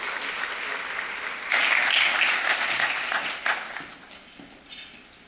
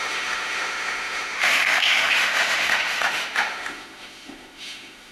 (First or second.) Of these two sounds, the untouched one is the first